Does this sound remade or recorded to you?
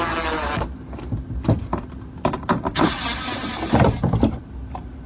recorded